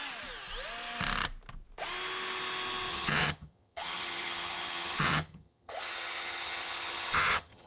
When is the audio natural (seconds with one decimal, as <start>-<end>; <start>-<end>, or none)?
0.0-2.9